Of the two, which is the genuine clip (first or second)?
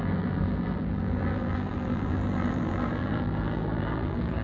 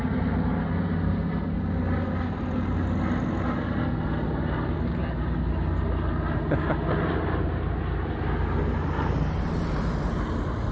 second